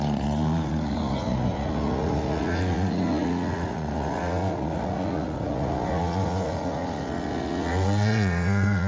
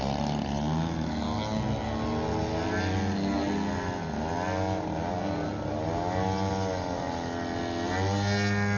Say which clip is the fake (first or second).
first